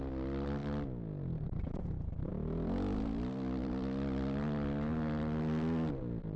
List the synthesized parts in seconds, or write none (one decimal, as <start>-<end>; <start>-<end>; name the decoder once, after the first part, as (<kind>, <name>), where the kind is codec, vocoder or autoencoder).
none